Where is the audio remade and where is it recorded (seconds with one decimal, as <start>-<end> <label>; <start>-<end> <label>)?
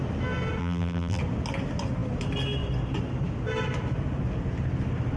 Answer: 0.0-0.6 recorded; 0.6-1.2 remade; 1.2-5.2 recorded